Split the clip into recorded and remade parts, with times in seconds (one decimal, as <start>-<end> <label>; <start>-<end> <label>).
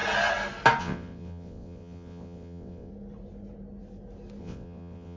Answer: 0.0-0.8 recorded; 0.8-2.9 remade; 2.9-4.4 recorded; 4.4-5.2 remade